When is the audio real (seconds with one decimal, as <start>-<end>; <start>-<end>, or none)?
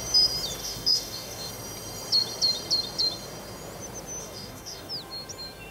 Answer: 0.0-0.6; 1.5-4.2; 4.9-5.7